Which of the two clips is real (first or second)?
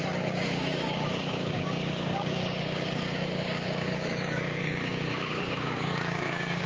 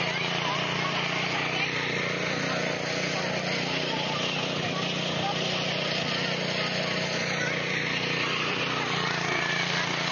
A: second